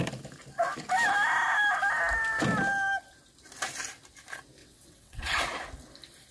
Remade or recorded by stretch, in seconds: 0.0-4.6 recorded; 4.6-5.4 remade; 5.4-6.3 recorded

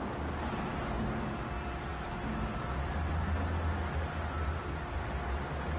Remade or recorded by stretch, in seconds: 0.0-5.8 recorded

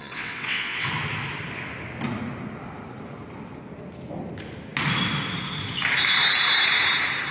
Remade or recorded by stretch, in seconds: 0.0-0.9 remade; 0.9-7.3 recorded